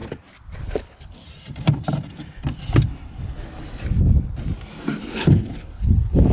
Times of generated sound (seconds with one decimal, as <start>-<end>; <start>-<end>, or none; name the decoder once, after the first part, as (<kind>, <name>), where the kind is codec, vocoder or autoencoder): 0.6-1.2 (codec, HILCodec); 5.0-6.3